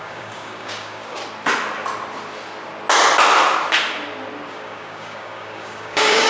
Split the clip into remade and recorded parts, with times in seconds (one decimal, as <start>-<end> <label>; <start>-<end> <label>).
0.0-1.2 remade; 1.2-4.5 recorded; 4.5-6.3 remade